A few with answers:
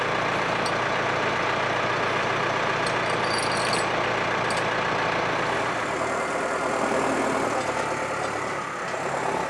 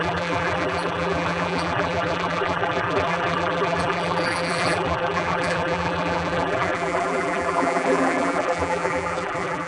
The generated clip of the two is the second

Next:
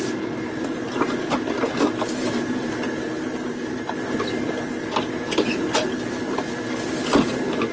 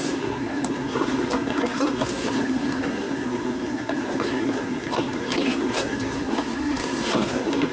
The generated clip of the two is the second